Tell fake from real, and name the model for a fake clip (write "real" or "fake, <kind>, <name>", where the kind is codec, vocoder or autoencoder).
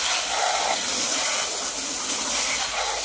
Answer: real